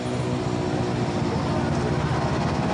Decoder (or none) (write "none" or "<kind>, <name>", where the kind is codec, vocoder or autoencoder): none